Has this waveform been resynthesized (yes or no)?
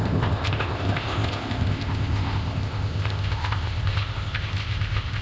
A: yes